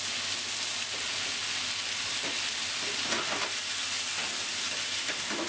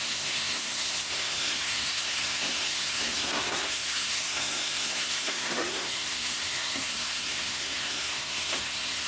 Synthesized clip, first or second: second